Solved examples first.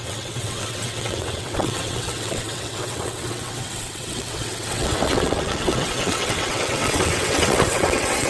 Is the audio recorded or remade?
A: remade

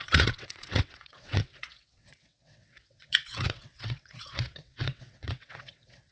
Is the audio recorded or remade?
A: remade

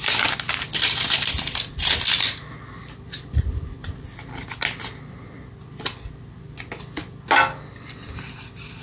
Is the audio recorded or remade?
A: recorded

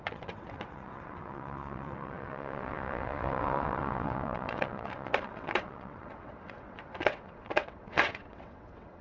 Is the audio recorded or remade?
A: remade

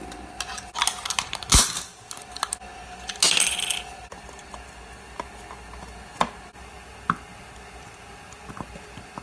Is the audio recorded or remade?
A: recorded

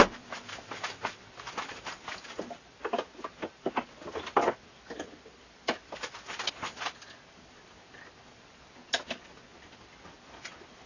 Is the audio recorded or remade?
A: recorded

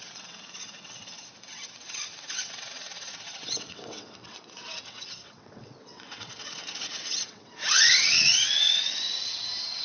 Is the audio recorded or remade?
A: remade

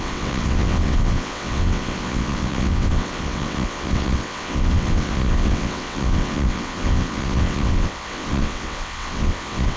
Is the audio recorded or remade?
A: remade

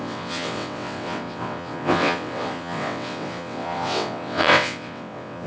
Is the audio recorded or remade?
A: remade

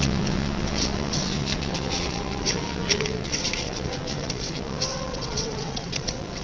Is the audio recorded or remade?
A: remade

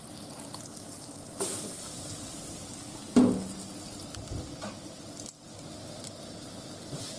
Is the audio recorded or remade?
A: recorded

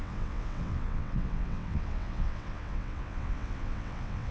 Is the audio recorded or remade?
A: remade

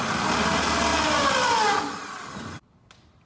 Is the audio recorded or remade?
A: recorded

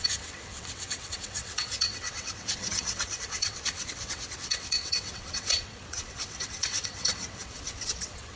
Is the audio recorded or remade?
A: remade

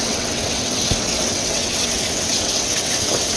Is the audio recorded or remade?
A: remade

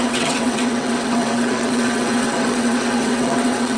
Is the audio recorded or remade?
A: remade